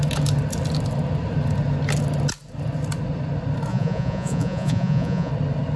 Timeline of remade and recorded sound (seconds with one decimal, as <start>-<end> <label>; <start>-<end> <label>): 0.0-3.7 recorded; 3.7-5.3 remade; 5.3-5.8 recorded